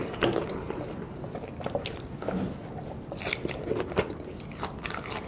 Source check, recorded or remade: recorded